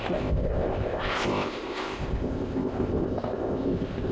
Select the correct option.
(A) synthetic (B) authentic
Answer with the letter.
A